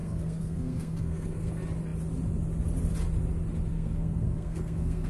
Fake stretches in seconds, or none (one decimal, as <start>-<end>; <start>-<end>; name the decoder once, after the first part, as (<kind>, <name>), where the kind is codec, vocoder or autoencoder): 0.0-1.5 (codec, SNAC); 3.7-5.1